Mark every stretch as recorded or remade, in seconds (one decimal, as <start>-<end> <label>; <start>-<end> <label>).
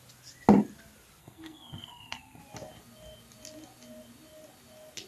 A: 0.0-1.2 recorded; 1.2-2.4 remade; 2.4-5.1 recorded